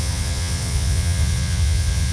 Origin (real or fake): fake